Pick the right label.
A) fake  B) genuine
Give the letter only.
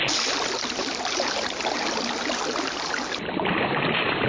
B